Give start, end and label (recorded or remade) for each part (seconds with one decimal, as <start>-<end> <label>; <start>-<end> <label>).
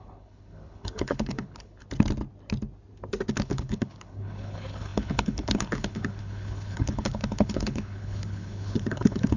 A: 0.0-1.8 remade; 1.8-3.3 recorded; 3.3-9.4 remade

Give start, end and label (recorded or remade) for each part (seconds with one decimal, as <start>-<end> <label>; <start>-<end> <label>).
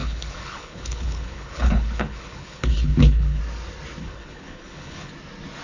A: 0.0-3.4 remade; 3.4-4.0 recorded; 4.0-5.1 remade; 5.1-5.6 recorded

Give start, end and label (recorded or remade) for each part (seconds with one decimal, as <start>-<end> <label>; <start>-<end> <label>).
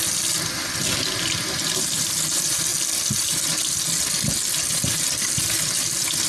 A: 0.0-6.3 recorded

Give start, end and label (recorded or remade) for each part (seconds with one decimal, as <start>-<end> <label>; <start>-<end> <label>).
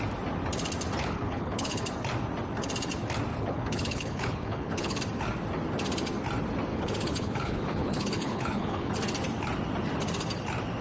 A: 0.0-1.0 recorded; 1.0-1.8 remade; 1.8-3.3 recorded; 3.3-5.0 remade; 5.0-6.7 recorded; 6.7-8.9 remade; 8.9-10.8 recorded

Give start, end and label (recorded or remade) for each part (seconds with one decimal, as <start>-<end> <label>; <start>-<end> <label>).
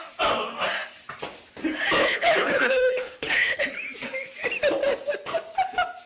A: 0.0-2.0 recorded; 2.0-3.6 remade; 3.6-6.1 recorded